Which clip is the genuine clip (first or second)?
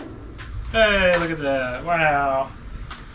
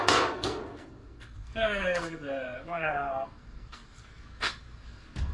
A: first